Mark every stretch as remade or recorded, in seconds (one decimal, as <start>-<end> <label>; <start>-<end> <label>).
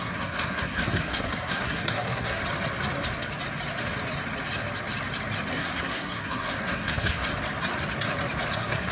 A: 0.0-2.4 remade; 2.4-5.5 recorded; 5.5-7.3 remade; 7.3-8.5 recorded; 8.5-8.9 remade